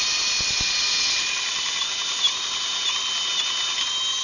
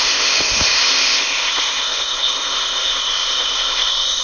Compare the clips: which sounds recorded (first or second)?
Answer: first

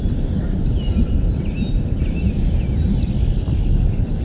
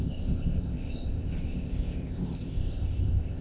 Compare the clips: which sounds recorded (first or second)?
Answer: first